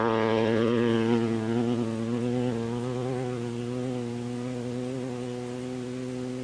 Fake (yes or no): no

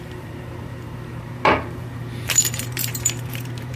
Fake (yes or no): yes